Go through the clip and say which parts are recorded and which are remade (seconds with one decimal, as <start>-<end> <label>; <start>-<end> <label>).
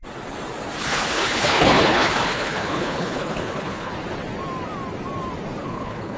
0.0-0.8 recorded; 0.8-3.9 remade; 3.9-5.6 recorded; 5.6-6.2 remade